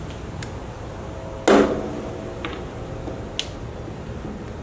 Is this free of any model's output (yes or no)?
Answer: yes